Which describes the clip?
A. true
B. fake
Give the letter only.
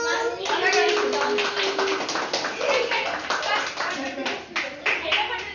A